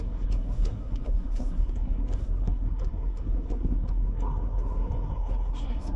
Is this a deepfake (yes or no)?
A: yes